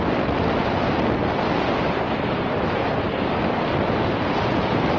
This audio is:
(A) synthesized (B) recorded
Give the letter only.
B